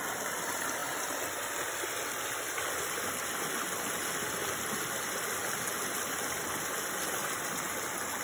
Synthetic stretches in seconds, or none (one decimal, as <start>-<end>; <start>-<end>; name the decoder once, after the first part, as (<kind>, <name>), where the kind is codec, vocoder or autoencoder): none